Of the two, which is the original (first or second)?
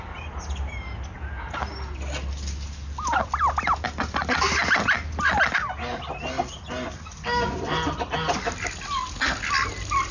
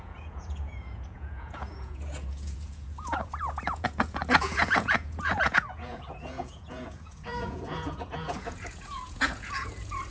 first